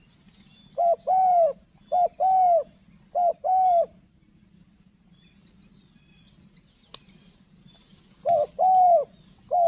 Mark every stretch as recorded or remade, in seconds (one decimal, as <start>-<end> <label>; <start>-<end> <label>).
0.0-3.3 recorded; 3.3-5.0 remade; 5.0-9.7 recorded